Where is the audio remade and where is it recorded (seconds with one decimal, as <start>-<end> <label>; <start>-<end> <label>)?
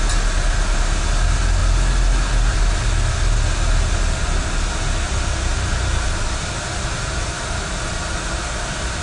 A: 0.0-9.0 recorded